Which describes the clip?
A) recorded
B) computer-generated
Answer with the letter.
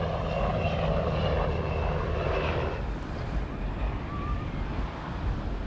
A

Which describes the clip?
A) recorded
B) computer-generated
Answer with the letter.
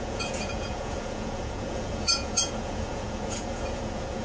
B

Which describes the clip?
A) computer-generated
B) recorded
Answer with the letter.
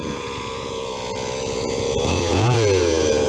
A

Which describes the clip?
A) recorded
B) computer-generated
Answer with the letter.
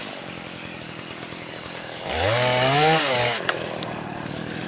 B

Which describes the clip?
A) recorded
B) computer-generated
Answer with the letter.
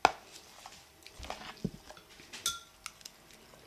A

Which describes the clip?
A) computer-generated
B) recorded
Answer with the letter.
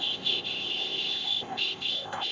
A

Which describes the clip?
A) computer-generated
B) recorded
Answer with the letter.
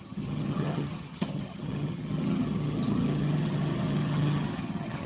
A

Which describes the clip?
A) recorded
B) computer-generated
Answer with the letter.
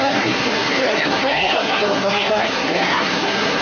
B